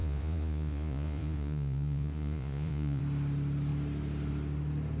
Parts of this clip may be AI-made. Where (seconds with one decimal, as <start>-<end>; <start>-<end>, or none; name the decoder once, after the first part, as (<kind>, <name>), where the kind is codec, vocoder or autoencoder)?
0.0-3.0 (vocoder, Vocos)